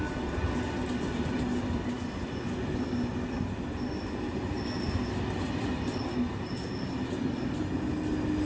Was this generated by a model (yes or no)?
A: no